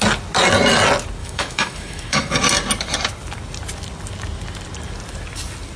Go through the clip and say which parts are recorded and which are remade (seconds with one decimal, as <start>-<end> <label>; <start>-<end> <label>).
0.0-1.2 recorded; 1.2-2.3 remade; 2.3-5.8 recorded